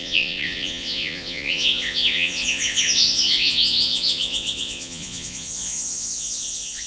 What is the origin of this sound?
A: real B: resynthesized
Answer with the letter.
B